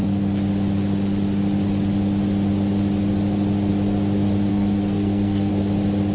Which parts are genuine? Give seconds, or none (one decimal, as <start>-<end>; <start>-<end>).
0.0-4.5; 5.5-6.1